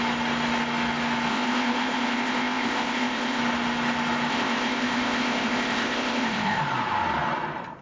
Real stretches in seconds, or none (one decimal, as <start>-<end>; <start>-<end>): 0.0-1.3; 3.4-4.3; 6.6-7.8